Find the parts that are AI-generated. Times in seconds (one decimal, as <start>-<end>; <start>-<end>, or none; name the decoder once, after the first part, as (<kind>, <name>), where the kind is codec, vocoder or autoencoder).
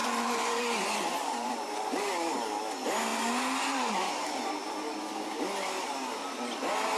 0.0-0.6 (vocoder, Vocos); 1.1-2.0